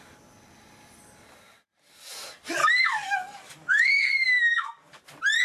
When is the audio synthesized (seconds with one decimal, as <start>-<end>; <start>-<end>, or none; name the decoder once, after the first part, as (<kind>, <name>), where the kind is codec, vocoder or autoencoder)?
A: 2.6-5.0 (codec, DAC)